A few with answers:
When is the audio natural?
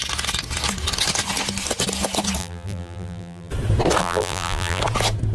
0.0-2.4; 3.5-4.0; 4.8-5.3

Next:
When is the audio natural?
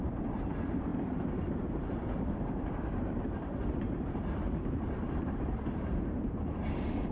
none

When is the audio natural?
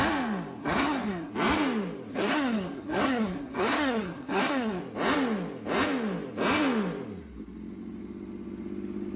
0.0-0.6; 1.3-2.1; 4.8-9.2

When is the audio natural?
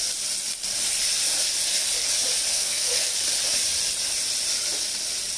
0.0-2.5; 3.1-5.4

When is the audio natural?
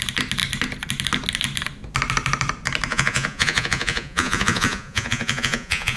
0.0-2.9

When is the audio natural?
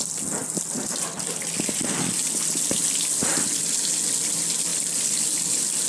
0.0-5.9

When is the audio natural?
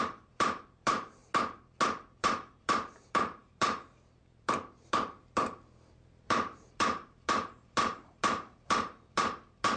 1.2-2.2